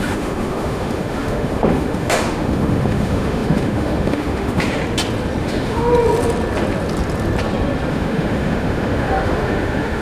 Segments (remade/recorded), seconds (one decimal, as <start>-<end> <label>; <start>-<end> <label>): 0.0-4.8 remade; 4.8-5.4 recorded; 5.4-5.9 remade; 5.9-7.9 recorded; 7.9-10.0 remade